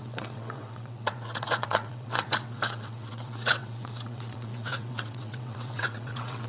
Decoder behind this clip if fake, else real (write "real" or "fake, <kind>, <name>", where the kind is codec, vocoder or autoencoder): fake, vocoder, WaveNeXt